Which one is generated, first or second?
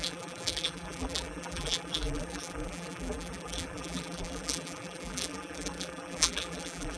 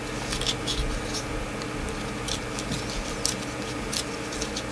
first